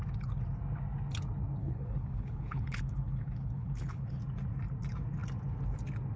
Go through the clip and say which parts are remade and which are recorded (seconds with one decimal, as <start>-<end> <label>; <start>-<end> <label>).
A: 0.0-1.6 recorded; 1.6-4.2 remade; 4.2-6.2 recorded